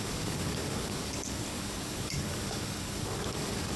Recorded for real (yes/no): no